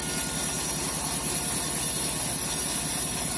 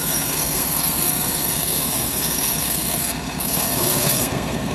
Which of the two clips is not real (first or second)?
second